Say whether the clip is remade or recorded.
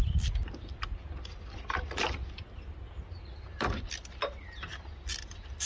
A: recorded